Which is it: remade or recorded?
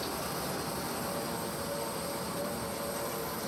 recorded